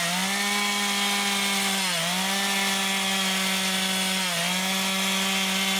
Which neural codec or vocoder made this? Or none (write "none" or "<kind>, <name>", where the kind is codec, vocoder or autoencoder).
none